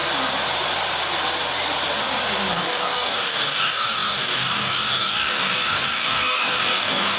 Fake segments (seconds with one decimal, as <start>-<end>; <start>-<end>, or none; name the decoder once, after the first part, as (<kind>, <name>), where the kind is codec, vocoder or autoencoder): 2.5-7.2 (codec, DAC)